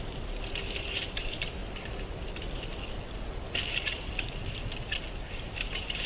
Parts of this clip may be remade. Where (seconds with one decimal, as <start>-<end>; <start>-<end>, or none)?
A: 0.0-1.6; 3.7-4.4; 5.3-6.1